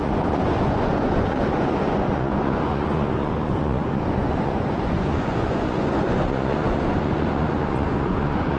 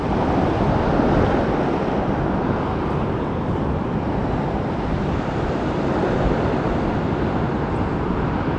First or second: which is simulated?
first